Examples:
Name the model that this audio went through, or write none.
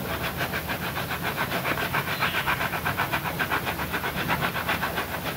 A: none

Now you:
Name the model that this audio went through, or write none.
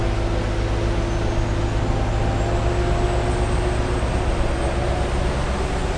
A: none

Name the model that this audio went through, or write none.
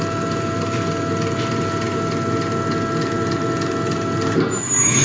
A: none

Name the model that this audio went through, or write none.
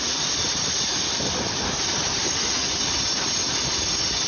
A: none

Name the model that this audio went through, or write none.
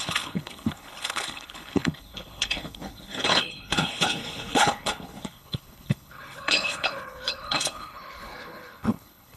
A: codec, HILCodec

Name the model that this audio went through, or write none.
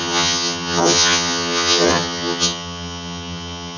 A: vocoder, HiFi-GAN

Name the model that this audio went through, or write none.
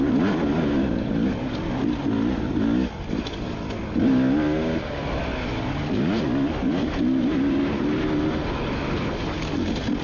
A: none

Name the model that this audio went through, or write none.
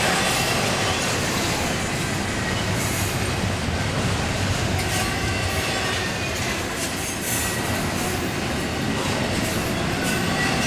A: none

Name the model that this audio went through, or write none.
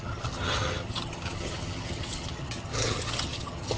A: vocoder, HiFi-GAN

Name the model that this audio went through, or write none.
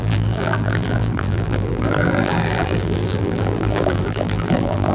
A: vocoder, BigVGAN v2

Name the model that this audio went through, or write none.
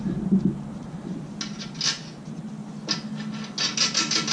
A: none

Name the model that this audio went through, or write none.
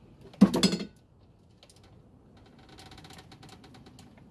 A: none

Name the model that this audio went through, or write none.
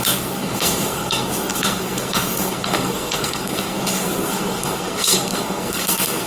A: codec, SNAC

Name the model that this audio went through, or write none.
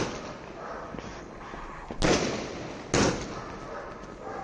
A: none